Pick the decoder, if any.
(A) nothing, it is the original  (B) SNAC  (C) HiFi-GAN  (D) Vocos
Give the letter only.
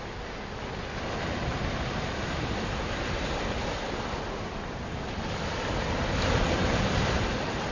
A